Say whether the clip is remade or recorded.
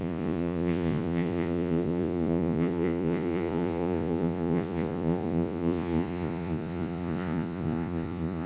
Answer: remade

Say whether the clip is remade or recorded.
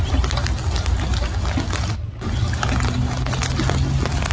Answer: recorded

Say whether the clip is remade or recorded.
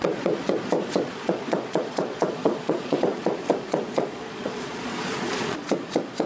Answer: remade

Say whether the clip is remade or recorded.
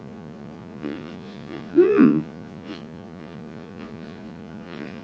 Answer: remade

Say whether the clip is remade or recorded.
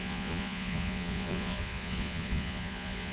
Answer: remade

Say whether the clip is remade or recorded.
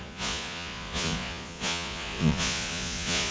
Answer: remade